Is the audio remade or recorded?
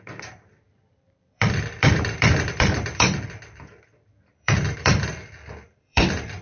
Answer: remade